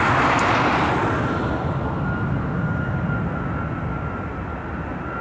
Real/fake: real